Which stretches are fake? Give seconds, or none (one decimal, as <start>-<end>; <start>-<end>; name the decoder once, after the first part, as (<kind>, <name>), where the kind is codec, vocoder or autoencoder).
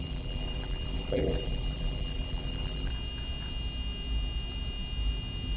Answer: 0.0-2.9 (vocoder, BigVGAN v2)